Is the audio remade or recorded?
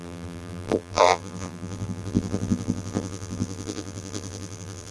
remade